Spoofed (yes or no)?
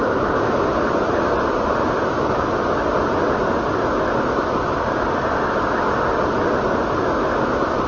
no